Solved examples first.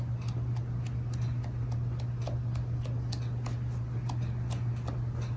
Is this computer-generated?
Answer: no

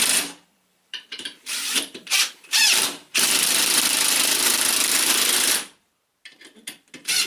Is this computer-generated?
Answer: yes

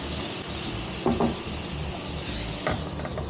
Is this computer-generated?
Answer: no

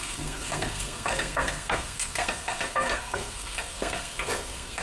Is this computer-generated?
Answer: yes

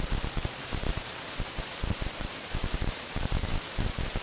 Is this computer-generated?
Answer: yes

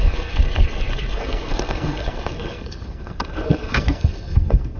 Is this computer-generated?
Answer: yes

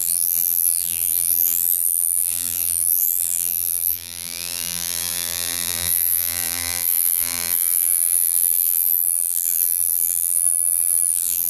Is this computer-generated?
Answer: yes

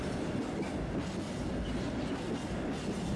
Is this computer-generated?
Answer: no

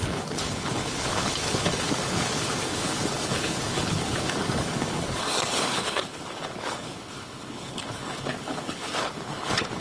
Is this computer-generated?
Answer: yes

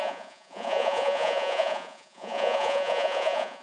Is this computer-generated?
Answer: yes